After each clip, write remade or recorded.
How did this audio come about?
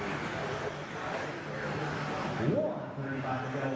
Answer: recorded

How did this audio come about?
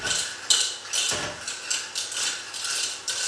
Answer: recorded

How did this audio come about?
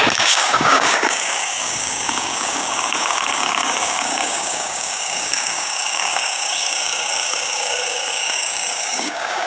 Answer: remade